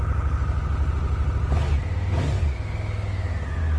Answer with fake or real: real